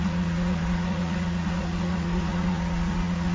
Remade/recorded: remade